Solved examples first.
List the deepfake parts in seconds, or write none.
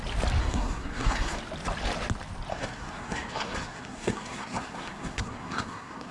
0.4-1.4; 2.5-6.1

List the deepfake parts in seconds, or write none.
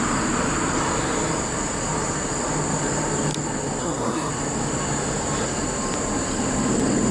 3.8-4.3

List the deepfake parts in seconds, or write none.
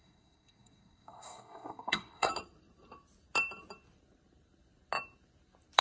0.0-2.3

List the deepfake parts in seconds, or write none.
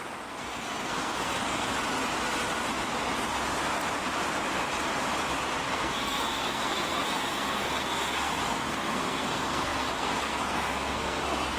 0.0-1.7; 5.6-11.6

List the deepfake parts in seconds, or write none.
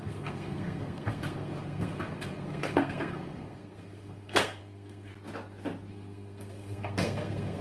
0.0-5.1; 5.9-7.6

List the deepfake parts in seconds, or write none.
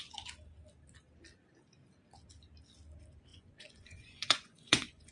3.3-5.1